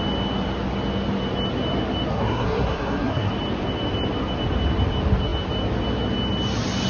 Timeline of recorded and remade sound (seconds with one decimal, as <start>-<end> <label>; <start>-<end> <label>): 0.0-2.1 recorded; 2.1-3.3 remade; 3.3-6.9 recorded